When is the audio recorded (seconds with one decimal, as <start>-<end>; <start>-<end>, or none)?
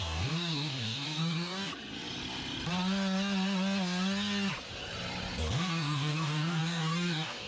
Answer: 1.7-5.5